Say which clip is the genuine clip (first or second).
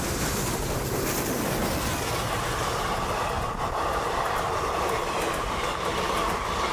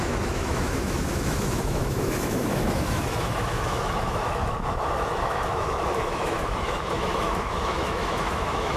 first